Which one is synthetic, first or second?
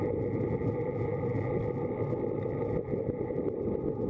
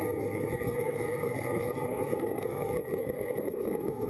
second